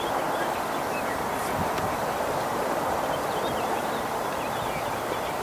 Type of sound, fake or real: real